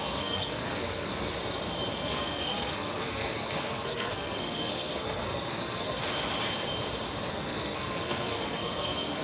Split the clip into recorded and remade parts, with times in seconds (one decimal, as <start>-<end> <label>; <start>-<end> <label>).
0.0-1.1 remade; 1.1-1.9 recorded; 1.9-6.0 remade; 6.0-7.3 recorded; 7.3-9.2 remade